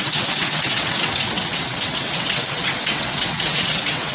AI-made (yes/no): yes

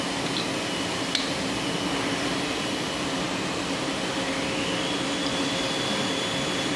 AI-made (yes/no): no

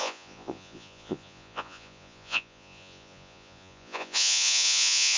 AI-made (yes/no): yes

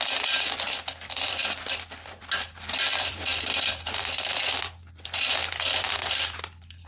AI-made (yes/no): no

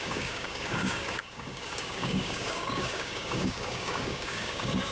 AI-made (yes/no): yes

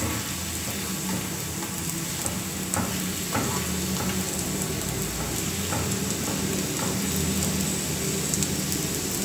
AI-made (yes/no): no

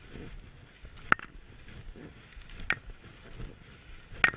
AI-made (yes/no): no